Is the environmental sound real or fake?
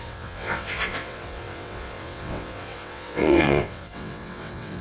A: fake